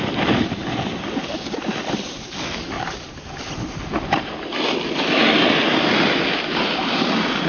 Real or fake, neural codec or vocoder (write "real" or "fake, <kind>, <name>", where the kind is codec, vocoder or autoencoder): real